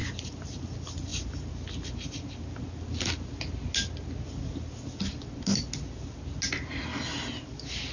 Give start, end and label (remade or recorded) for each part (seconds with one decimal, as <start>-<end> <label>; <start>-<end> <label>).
0.0-0.6 remade; 0.6-7.9 recorded